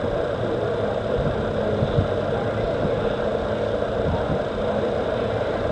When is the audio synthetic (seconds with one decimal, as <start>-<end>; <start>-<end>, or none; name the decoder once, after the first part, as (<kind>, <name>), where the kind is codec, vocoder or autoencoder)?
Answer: none